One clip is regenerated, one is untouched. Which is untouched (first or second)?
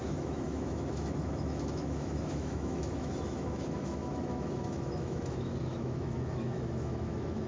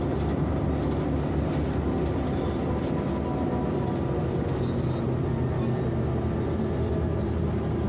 second